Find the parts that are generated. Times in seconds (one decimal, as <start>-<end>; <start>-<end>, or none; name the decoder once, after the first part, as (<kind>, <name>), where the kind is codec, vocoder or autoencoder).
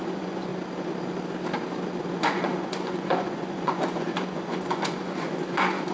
0.0-0.5 (vocoder, Vocos); 2.0-5.9